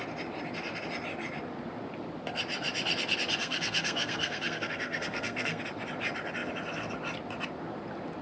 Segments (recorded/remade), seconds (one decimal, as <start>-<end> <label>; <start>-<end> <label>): 0.0-3.4 recorded; 3.4-5.6 remade; 5.6-8.2 recorded